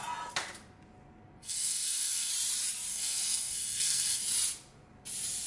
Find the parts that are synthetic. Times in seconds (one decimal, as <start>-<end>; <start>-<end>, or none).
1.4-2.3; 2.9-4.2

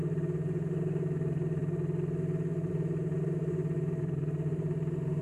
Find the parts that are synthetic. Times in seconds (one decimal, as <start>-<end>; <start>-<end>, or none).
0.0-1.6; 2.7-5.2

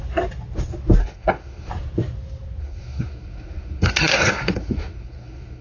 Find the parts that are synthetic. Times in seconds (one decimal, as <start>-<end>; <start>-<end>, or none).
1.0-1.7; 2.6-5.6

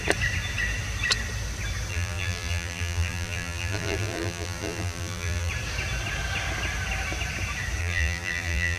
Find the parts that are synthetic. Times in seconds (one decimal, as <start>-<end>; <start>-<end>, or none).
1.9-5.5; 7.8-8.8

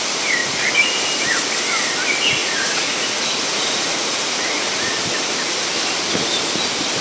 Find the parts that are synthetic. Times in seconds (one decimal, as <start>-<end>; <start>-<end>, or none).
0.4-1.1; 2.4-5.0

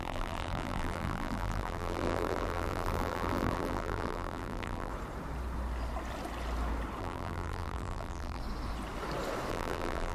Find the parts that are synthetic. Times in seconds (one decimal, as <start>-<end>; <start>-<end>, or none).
0.0-4.9; 7.0-8.4; 9.5-10.1